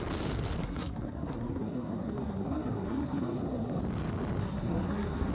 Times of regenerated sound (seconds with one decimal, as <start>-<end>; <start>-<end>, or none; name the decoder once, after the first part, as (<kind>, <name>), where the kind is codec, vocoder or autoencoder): 0.6-3.8 (codec, SNAC); 4.4-5.3